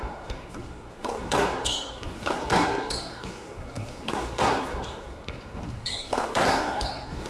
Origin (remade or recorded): remade